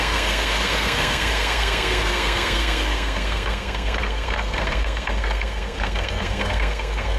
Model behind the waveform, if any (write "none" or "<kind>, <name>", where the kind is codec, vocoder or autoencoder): codec, SNAC